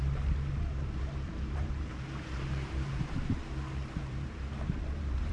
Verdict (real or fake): fake